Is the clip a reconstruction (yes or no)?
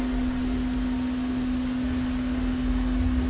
no